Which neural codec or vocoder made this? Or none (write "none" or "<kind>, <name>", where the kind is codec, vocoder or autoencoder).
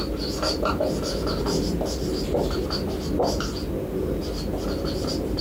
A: none